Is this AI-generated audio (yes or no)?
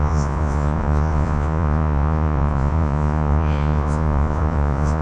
yes